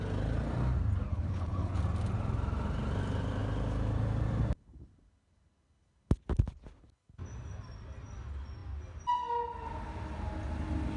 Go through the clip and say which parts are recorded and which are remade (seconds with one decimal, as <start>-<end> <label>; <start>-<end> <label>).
0.0-1.1 recorded; 1.1-1.8 remade; 1.8-11.0 recorded